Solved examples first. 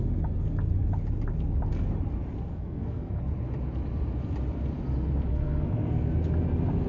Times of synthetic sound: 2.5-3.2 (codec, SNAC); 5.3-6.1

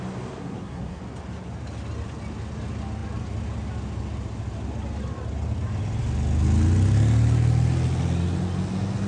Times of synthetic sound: 0.4-1.0 (codec, SNAC)

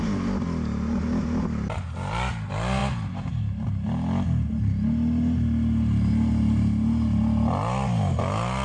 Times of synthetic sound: none

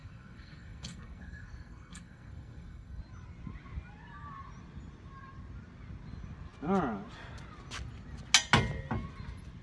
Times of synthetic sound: 0.0-3.0 (codec, SNAC)

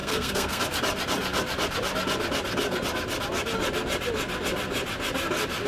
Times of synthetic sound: 0.0-0.6 (codec, SNAC)